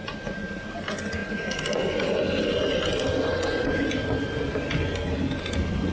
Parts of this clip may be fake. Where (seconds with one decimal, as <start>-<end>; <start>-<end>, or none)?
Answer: none